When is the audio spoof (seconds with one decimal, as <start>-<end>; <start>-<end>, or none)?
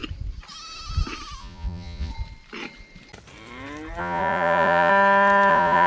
1.4-2.1; 4.0-4.9; 5.5-5.9